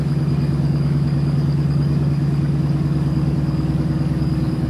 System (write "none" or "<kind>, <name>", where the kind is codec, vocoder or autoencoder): codec, DAC